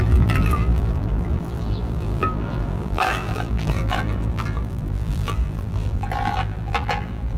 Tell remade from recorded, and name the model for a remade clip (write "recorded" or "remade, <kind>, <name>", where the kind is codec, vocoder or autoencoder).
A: remade, vocoder, BigVGAN v2